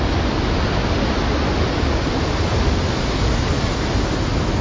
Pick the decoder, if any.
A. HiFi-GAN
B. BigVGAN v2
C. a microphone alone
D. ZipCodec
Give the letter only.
C